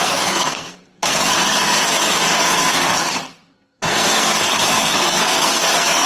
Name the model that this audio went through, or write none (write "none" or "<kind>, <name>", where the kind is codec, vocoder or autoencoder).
codec, SNAC